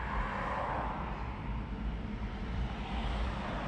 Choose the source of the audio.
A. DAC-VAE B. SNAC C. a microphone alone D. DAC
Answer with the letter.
C